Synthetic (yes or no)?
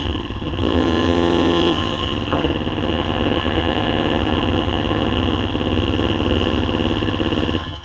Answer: yes